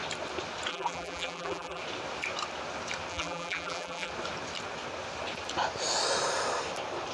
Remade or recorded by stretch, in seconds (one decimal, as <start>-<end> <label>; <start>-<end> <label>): 0.0-0.7 recorded; 0.7-1.8 remade; 1.8-3.1 recorded; 3.1-4.1 remade; 4.1-7.1 recorded